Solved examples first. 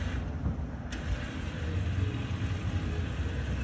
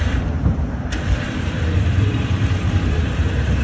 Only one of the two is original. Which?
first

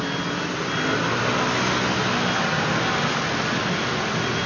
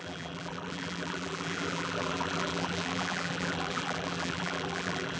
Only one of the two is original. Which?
first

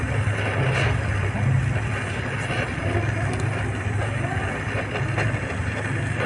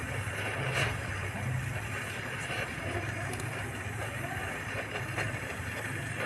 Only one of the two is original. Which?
first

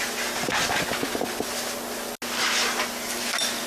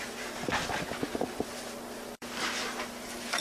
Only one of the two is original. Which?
first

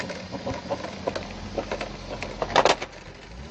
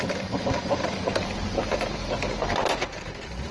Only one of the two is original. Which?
first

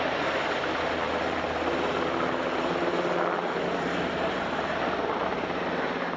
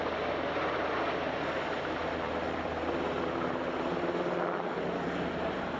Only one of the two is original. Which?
second